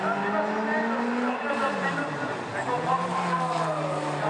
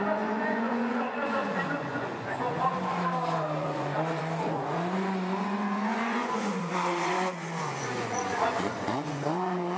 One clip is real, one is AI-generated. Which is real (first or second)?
first